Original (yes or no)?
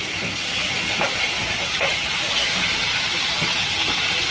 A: yes